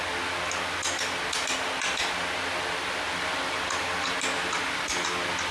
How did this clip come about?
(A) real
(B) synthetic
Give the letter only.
A